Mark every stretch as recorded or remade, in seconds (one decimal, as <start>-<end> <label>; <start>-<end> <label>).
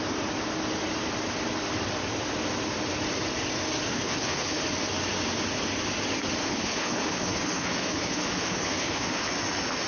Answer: 0.0-3.9 recorded; 3.9-4.6 remade; 4.6-6.4 recorded; 6.4-9.3 remade; 9.3-9.9 recorded